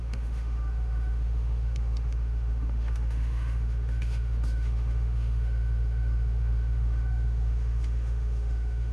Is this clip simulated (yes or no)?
yes